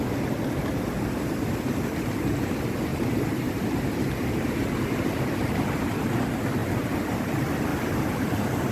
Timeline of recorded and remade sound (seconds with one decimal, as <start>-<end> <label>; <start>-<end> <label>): 0.0-2.9 recorded; 2.9-5.8 remade; 5.8-6.6 recorded; 6.6-7.3 remade; 7.3-7.7 recorded; 7.7-8.7 remade